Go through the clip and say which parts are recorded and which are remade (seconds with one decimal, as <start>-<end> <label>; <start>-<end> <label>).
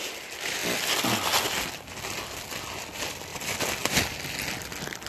0.0-5.1 recorded